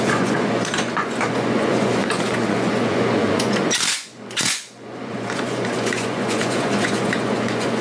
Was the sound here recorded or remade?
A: remade